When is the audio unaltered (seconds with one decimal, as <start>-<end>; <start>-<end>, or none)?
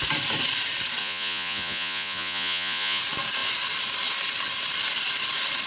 0.0-1.0; 3.0-5.7